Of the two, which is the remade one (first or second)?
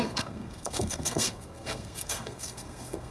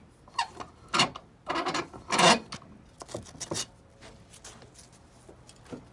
first